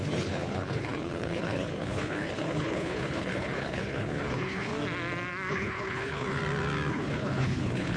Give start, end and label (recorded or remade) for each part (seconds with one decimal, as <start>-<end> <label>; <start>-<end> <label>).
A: 0.0-4.7 remade; 4.7-5.5 recorded; 5.5-6.4 remade; 6.4-6.9 recorded; 6.9-8.0 remade